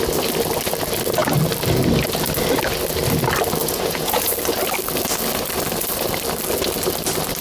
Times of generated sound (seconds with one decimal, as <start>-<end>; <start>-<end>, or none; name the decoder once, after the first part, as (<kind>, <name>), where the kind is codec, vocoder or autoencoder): 3.6-4.3 (vocoder, Vocos)